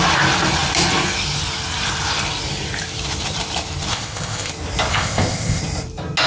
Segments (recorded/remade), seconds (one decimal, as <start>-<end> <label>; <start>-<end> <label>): 0.0-3.9 recorded; 3.9-4.5 remade; 4.5-4.9 recorded; 4.9-5.6 remade; 5.6-6.3 recorded